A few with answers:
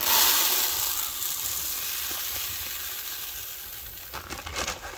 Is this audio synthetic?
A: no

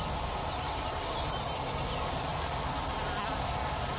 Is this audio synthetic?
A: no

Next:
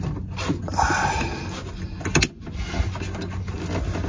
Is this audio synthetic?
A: no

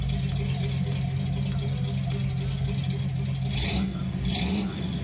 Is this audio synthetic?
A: no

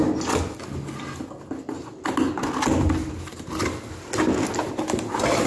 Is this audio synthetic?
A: no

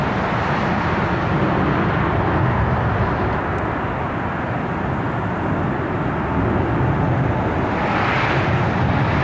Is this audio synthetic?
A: no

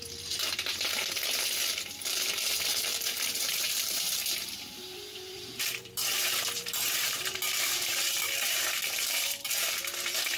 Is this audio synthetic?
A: yes